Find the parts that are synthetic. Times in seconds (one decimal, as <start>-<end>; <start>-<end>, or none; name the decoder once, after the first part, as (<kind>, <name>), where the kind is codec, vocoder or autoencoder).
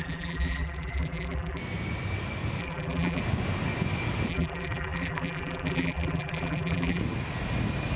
0.0-1.6 (vocoder, BigVGAN v2); 2.6-3.2; 4.3-7.0